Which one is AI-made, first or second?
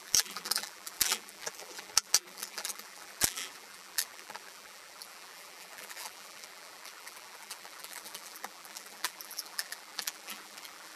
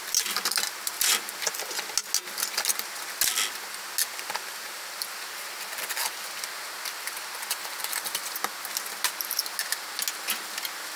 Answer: first